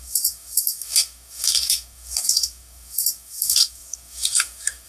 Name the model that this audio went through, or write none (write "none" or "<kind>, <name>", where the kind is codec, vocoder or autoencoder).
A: codec, DAC